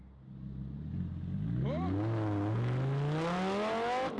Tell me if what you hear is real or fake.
real